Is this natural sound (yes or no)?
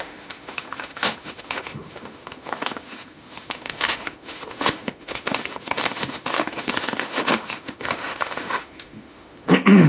no